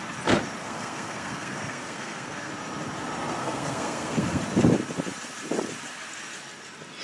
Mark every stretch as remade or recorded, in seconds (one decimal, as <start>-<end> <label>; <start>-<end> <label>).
0.0-0.6 recorded; 0.6-2.5 remade; 2.5-3.4 recorded; 3.4-4.4 remade; 4.4-7.0 recorded